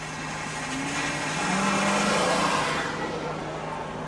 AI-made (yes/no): no